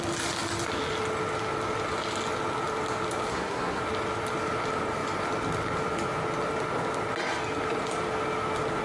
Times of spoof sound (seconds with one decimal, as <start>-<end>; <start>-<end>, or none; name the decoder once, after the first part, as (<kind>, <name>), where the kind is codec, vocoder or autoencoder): 3.3-3.8 (codec, SNAC)